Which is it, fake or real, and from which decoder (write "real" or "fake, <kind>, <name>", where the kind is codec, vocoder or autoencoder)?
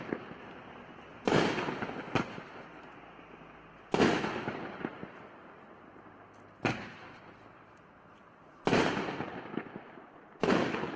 real